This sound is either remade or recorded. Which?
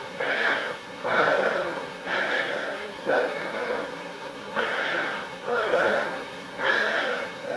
remade